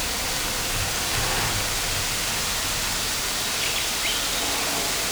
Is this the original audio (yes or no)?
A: yes